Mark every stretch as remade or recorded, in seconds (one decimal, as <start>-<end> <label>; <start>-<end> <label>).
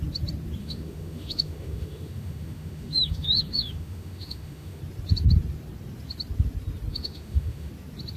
0.0-0.6 recorded; 0.6-4.8 remade; 4.8-6.9 recorded; 6.9-7.7 remade; 7.7-8.2 recorded